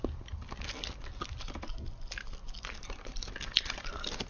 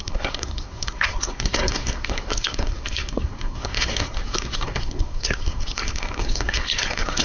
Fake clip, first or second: second